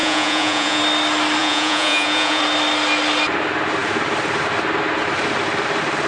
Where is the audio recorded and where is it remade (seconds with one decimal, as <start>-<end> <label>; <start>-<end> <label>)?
0.0-0.8 remade; 0.8-1.4 recorded; 1.4-2.4 remade; 2.4-6.1 recorded